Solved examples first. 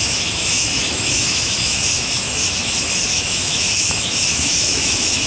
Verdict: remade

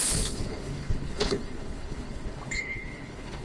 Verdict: remade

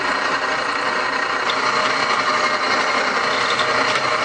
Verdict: recorded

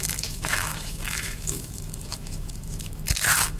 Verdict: remade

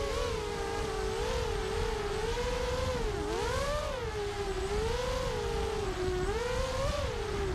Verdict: recorded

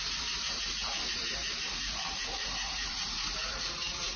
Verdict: remade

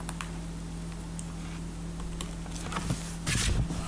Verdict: recorded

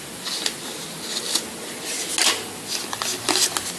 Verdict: recorded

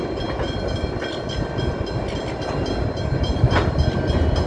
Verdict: recorded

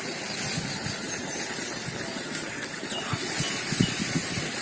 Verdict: recorded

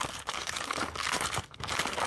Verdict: remade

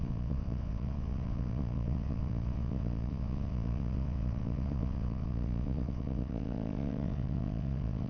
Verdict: remade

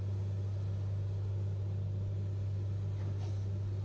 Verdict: recorded